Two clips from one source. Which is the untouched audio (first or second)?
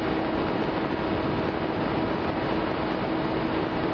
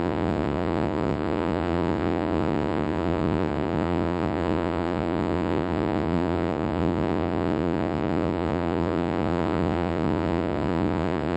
first